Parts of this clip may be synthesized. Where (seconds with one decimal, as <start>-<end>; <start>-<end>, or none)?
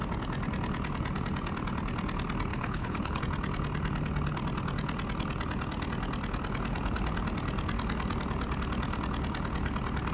2.5-3.2